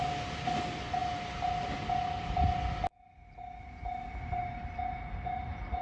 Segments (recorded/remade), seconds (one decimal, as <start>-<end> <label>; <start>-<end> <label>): 0.0-5.8 recorded